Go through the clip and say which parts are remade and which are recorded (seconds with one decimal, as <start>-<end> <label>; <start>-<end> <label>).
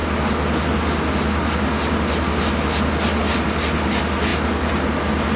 0.0-5.4 recorded